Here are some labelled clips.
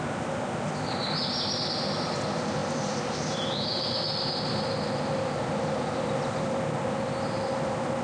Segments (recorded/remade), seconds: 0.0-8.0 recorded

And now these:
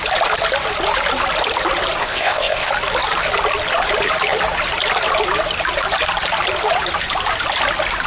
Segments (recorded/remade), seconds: 0.0-2.0 recorded; 2.0-2.7 remade; 2.7-8.1 recorded

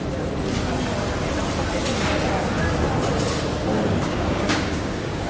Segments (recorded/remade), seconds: 0.0-3.7 recorded; 3.7-5.3 remade

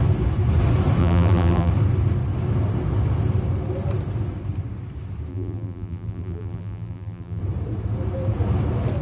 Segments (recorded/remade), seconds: 0.0-1.0 recorded; 1.0-1.7 remade; 1.7-5.3 recorded; 5.3-7.4 remade; 7.4-9.0 recorded